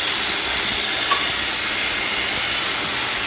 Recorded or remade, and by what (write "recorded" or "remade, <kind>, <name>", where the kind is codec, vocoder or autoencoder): recorded